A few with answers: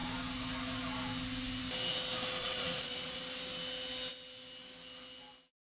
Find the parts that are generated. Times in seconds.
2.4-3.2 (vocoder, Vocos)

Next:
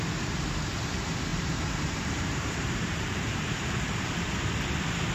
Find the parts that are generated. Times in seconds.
1.3-4.4 (vocoder, BigVGAN v2)

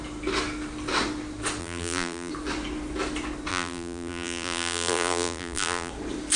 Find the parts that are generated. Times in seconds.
1.6-2.3 (vocoder, BigVGAN v2); 3.5-5.9